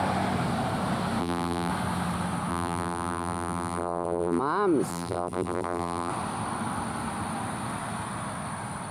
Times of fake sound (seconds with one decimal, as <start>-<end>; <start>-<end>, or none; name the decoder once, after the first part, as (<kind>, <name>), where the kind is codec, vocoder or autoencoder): 1.2-1.7 (vocoder, BigVGAN v2); 2.5-4.4; 4.9-6.1